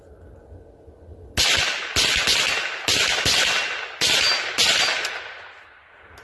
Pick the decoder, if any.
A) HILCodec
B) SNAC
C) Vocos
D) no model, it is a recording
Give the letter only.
D